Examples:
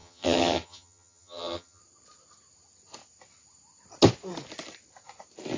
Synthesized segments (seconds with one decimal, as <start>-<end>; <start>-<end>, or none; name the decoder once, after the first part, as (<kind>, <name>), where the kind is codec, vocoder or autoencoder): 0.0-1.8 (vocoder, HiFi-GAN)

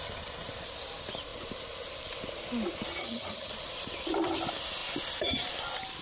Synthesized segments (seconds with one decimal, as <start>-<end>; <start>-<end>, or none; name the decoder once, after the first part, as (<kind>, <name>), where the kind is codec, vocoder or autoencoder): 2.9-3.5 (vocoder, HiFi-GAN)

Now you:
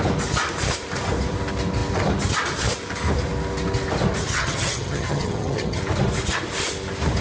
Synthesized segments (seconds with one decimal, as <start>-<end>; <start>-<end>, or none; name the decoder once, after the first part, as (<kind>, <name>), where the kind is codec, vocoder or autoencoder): 4.3-5.8 (vocoder, HiFi-GAN)